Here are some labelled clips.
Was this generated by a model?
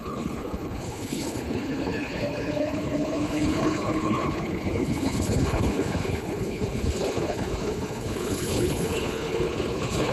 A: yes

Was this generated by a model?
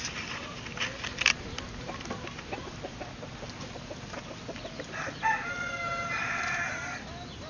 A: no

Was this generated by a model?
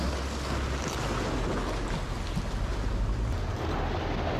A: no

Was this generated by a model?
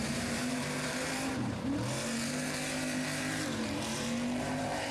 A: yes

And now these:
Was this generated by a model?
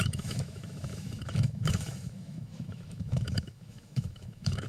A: yes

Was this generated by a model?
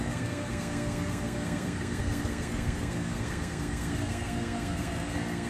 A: yes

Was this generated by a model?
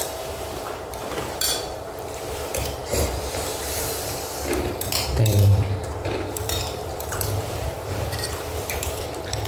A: yes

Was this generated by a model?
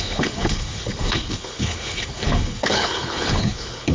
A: yes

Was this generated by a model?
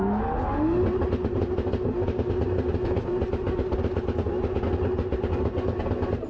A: no